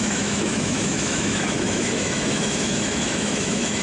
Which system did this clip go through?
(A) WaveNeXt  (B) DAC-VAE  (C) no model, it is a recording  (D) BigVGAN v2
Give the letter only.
B